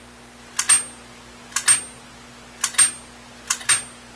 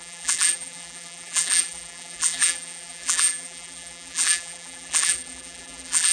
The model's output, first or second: second